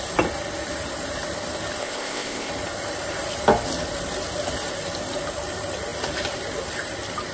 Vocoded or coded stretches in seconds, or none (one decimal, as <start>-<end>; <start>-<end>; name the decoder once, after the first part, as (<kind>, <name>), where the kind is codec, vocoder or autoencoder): 1.8-2.5 (codec, ZipCodec)